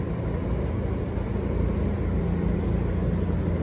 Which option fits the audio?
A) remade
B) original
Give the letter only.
B